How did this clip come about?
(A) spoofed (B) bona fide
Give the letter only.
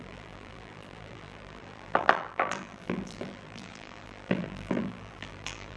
A